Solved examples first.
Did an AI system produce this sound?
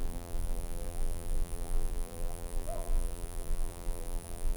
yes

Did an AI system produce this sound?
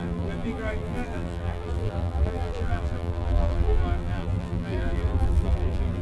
yes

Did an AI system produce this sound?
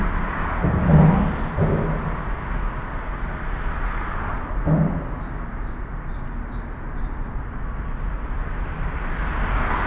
no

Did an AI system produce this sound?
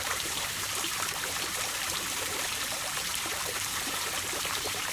yes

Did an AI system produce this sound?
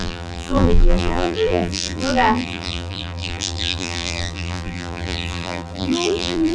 yes